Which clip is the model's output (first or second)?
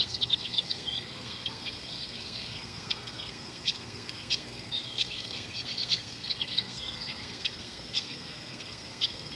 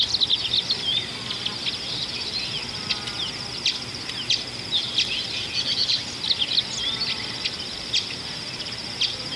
first